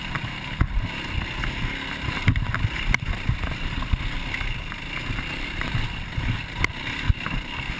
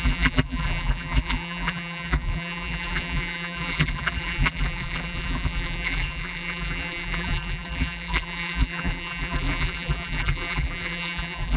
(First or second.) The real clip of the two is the first